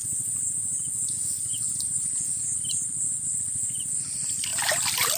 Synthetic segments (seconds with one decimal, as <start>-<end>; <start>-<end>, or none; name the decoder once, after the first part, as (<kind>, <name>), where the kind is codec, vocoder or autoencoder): 1.3-5.2 (vocoder, BigVGAN v2)